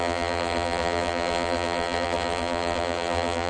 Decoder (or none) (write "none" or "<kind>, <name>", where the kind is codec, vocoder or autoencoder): vocoder, BigVGAN v2